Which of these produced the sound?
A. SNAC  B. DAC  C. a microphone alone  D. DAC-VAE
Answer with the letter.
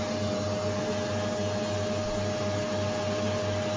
C